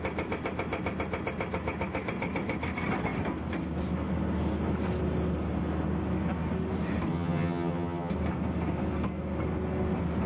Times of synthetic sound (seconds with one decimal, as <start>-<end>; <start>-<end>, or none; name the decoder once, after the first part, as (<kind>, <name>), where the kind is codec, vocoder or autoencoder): 7.1-8.1 (vocoder, HiFi-GAN)